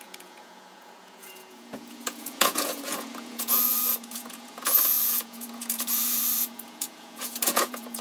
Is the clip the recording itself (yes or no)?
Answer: no